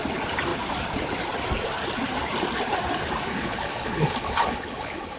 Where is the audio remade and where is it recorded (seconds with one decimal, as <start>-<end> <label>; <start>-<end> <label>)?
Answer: 0.0-3.3 recorded; 3.3-5.2 remade